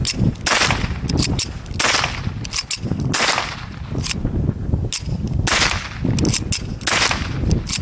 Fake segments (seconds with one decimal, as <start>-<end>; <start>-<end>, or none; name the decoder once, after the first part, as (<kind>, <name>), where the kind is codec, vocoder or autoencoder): none